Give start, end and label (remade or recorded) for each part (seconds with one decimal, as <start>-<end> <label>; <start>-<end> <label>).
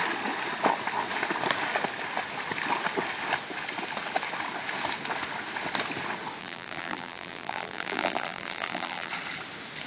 0.0-6.4 recorded; 6.4-9.1 remade; 9.1-9.9 recorded